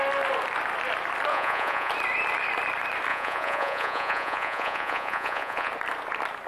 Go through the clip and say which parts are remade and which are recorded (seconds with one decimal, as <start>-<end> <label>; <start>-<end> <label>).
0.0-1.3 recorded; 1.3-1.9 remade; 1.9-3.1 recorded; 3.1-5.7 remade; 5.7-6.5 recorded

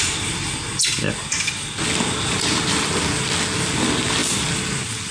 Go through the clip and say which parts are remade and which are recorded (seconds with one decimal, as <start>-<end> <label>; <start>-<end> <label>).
0.0-5.1 recorded

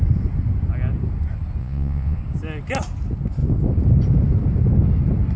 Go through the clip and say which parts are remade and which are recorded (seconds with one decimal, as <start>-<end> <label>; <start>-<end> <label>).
0.0-1.6 recorded; 1.6-2.2 remade; 2.2-5.4 recorded

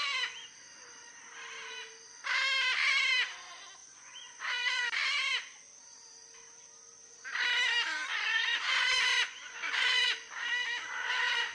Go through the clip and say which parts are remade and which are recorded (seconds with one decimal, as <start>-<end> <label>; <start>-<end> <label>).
0.0-3.8 recorded; 3.8-4.8 remade; 4.8-8.1 recorded; 8.1-10.1 remade; 10.1-11.5 recorded

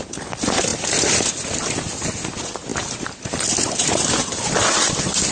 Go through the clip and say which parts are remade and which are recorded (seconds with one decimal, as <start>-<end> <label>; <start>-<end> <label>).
0.0-5.3 recorded